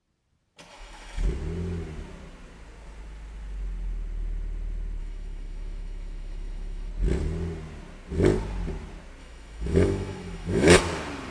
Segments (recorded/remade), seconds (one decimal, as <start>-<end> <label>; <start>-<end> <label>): 0.0-0.7 recorded; 0.7-1.2 remade; 1.2-5.0 recorded; 5.0-6.9 remade; 6.9-9.2 recorded; 9.2-10.8 remade; 10.8-11.3 recorded